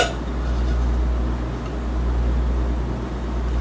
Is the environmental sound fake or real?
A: real